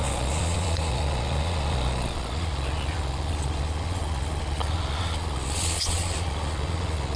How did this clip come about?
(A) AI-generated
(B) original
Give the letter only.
A